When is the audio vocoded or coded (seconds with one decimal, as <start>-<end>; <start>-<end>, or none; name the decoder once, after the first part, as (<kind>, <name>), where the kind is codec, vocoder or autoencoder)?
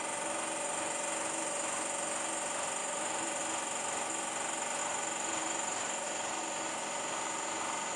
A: 2.8-3.4 (vocoder, BigVGAN v2); 4.8-6.4